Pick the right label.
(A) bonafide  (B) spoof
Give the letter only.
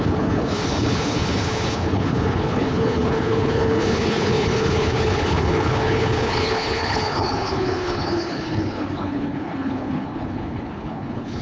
B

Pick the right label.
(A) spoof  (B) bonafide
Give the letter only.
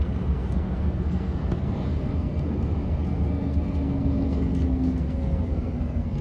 A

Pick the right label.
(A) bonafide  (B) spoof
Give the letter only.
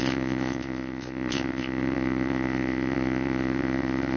B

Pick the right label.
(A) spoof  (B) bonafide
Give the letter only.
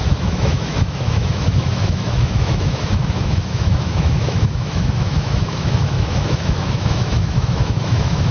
A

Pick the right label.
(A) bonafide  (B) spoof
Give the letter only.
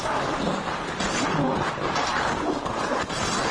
A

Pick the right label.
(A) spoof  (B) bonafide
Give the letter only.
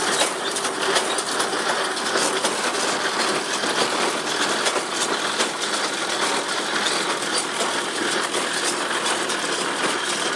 B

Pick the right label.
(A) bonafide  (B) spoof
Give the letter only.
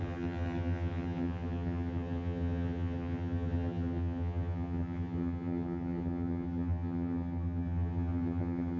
B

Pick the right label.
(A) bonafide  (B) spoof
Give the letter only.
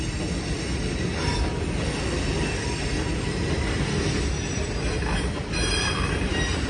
A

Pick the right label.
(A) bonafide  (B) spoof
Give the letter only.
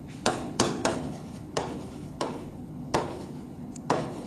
B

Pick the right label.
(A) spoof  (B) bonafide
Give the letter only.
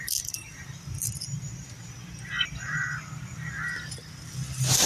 B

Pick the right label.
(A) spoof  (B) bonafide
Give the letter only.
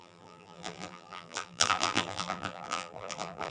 A